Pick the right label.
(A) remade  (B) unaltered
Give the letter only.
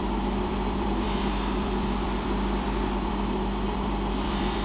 A